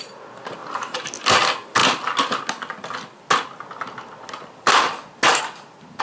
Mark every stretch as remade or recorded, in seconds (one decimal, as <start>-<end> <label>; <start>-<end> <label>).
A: 0.0-6.0 recorded